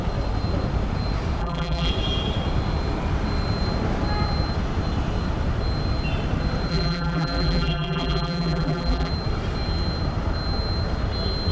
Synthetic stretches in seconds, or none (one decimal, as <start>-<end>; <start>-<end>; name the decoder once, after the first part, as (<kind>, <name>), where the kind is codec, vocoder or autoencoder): 1.4-1.9 (vocoder, BigVGAN v2); 6.7-9.1